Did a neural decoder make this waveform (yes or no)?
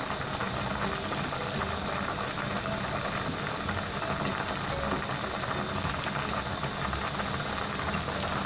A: no